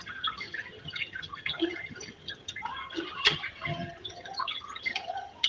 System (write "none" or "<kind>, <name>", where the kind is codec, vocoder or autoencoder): vocoder, HiFi-GAN